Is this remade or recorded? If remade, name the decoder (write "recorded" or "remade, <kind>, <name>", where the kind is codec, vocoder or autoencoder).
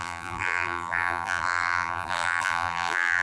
remade, vocoder, BigVGAN v2